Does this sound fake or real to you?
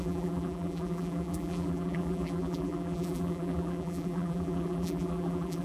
fake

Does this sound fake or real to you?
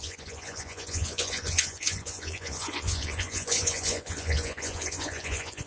fake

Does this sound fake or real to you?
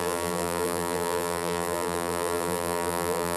fake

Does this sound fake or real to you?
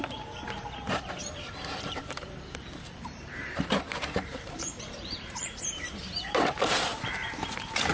fake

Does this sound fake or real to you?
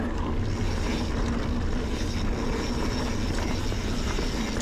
real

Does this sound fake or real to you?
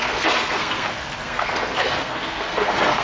fake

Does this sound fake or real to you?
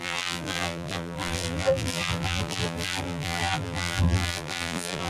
fake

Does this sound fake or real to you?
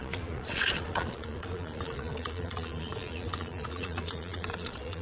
fake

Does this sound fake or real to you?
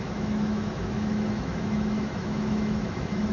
fake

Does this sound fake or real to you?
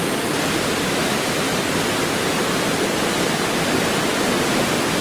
real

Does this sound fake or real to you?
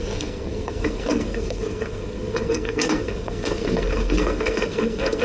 fake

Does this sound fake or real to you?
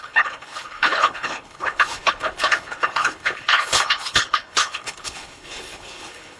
fake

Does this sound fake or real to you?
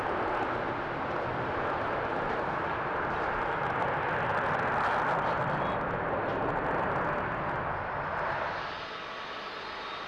real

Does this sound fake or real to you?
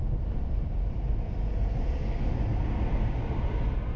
real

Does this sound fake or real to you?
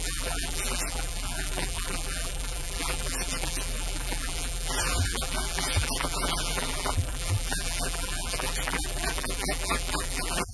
fake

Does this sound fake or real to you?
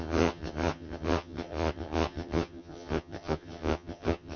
fake